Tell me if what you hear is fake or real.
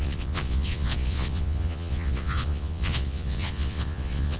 fake